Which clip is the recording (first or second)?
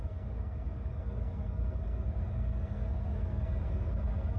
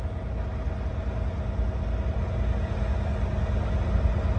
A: second